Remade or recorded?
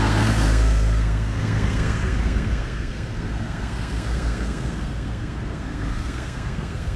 remade